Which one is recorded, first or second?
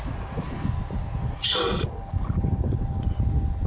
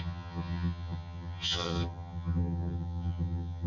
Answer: first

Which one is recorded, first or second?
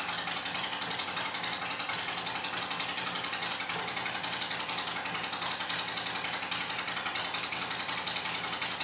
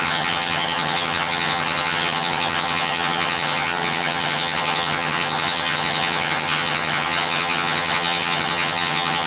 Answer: first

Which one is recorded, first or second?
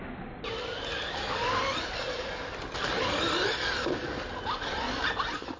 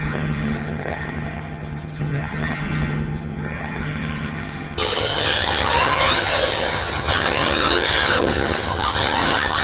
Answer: first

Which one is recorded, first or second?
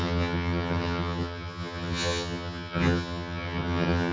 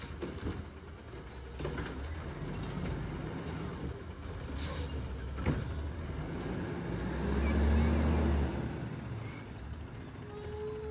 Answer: second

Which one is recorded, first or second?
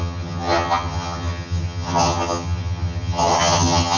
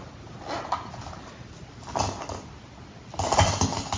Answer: second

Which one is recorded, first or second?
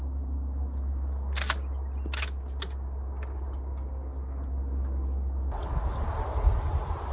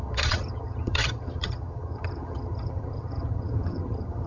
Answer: first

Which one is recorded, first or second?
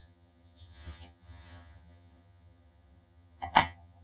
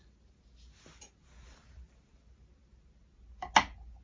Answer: second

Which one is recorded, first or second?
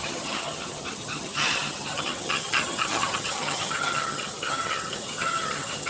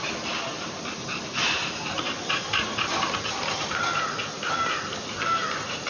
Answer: second